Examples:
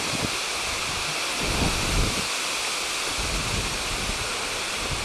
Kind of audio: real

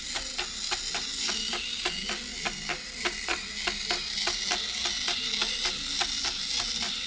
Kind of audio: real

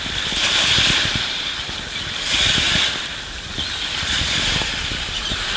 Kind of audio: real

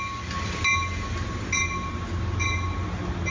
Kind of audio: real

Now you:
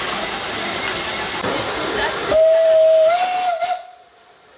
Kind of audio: real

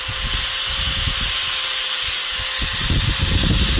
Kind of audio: real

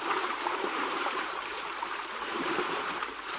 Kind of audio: fake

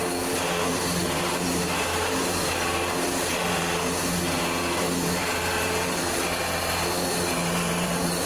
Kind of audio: fake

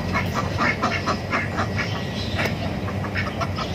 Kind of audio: real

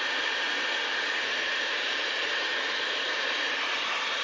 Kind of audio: fake